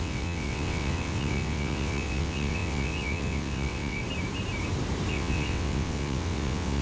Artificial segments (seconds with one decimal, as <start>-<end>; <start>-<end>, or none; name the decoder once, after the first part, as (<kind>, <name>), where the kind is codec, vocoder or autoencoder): 0.0-4.0 (vocoder, WaveNeXt); 5.1-6.8